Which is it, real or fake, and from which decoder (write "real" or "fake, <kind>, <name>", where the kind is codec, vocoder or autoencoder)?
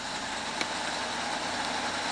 real